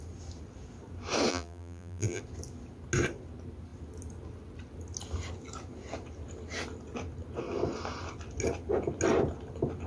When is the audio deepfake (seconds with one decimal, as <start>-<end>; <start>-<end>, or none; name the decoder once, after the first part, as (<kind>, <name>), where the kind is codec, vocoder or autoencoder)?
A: 1.3-2.2 (vocoder, BigVGAN v2)